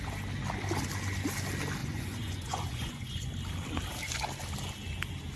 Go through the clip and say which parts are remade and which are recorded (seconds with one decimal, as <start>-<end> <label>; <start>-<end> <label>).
0.0-1.8 recorded; 1.8-3.3 remade; 3.3-5.4 recorded